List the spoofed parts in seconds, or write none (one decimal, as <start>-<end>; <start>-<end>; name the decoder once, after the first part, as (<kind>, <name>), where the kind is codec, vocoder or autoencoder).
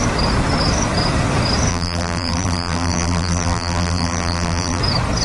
1.7-4.8 (vocoder, BigVGAN v2)